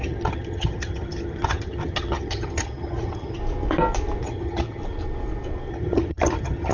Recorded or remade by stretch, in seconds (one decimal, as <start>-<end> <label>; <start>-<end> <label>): 0.0-3.4 remade; 3.4-4.2 recorded; 4.2-4.8 remade; 4.8-5.7 recorded; 5.7-6.7 remade